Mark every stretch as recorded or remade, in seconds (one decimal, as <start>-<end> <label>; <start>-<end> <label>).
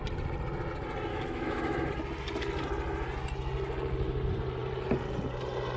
0.0-1.1 recorded; 1.1-1.9 remade; 1.9-5.8 recorded